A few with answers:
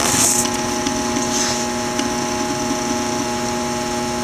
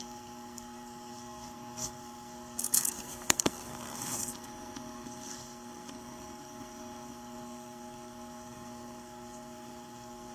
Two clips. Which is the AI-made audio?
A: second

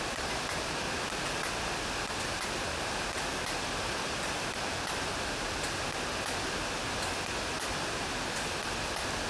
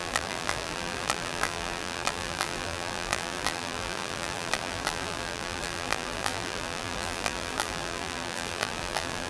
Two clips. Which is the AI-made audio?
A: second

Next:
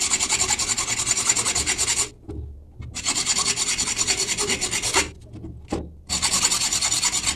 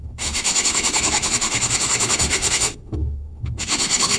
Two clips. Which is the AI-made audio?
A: second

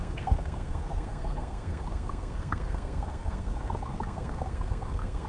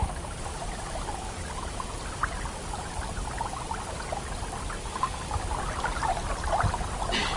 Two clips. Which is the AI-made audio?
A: first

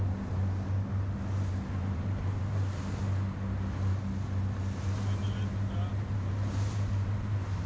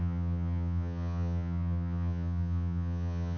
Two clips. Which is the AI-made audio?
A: second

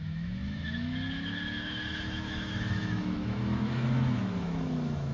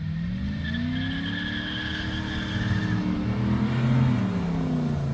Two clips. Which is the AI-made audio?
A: first